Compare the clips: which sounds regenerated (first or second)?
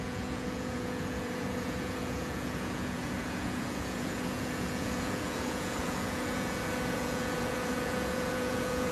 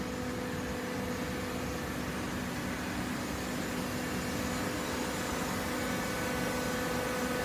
first